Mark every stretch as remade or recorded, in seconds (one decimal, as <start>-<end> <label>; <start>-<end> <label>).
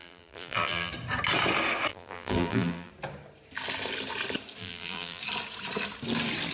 0.0-0.9 remade; 0.9-1.9 recorded; 1.9-2.9 remade; 2.9-4.6 recorded; 4.6-5.2 remade; 5.2-6.5 recorded